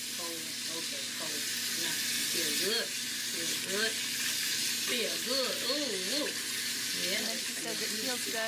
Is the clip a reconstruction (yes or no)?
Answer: no